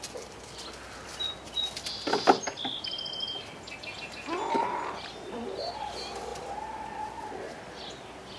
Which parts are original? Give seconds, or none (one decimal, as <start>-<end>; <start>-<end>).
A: 0.0-8.4